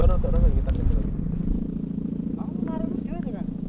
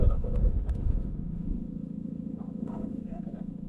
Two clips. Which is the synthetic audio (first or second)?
second